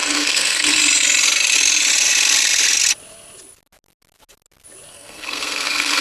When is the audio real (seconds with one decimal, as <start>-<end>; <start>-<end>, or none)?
0.8-4.9